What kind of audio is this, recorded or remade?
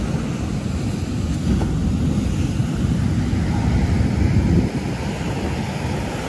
recorded